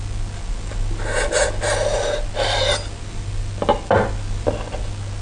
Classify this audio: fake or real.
real